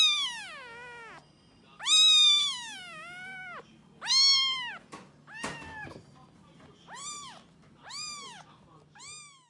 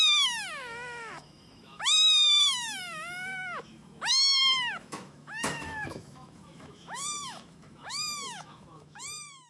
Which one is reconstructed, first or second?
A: second